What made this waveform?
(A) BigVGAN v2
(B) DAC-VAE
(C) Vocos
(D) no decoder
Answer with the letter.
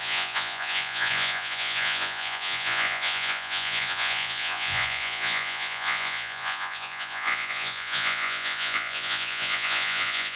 C